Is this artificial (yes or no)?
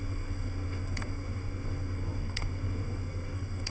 yes